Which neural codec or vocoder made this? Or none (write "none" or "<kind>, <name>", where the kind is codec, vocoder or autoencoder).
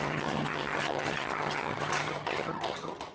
vocoder, HiFi-GAN